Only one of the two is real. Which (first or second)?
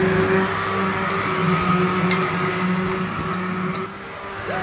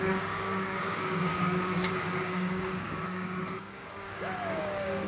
first